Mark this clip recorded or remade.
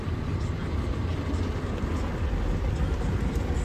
recorded